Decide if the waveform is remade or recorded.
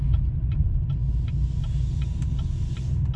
recorded